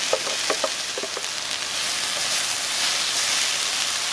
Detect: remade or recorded recorded